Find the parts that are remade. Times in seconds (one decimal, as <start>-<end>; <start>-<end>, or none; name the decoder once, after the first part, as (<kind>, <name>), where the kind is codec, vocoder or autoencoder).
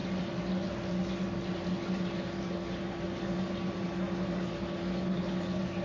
none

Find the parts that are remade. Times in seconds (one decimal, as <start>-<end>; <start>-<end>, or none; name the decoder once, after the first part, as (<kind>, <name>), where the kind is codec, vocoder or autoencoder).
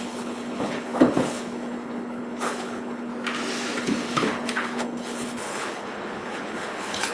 0.0-3.1 (codec, HILCodec); 3.8-7.1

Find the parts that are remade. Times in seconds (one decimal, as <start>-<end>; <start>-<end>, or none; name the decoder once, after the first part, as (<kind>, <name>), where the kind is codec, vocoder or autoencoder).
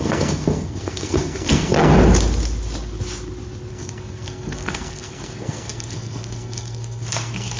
0.0-1.9 (codec, SNAC); 3.7-7.6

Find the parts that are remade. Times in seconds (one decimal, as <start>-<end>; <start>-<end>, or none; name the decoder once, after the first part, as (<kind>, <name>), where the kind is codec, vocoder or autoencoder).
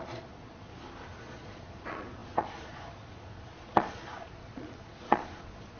0.0-0.7 (vocoder, Vocos); 1.2-5.8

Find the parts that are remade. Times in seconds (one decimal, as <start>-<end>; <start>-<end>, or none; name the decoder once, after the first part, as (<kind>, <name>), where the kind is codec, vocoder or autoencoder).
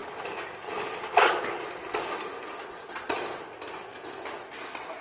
none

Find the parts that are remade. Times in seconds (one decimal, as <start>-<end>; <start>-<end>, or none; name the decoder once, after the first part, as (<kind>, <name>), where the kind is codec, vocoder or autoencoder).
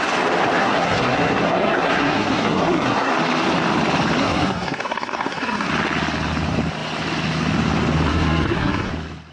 0.6-3.1 (codec, SNAC); 4.2-5.7; 8.1-8.9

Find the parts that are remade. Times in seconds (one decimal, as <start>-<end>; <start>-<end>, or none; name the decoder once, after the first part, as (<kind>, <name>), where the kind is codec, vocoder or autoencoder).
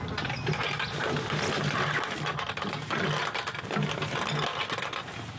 none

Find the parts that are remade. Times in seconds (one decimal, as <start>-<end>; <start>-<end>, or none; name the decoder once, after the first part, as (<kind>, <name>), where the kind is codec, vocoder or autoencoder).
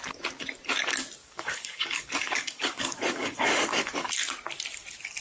1.2-4.1 (codec, DAC)